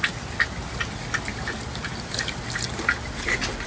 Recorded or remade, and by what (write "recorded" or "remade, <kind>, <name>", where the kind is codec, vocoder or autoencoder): recorded